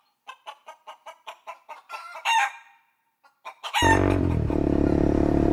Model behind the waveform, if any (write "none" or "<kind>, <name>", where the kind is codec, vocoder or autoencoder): vocoder, BigVGAN v2